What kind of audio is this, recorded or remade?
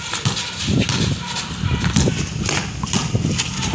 recorded